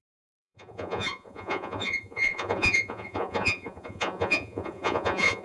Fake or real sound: fake